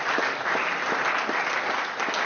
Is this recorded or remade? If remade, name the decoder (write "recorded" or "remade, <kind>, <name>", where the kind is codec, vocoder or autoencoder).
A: recorded